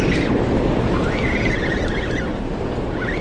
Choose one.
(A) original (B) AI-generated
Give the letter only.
A